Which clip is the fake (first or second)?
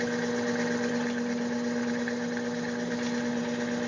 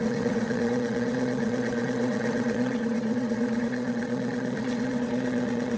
second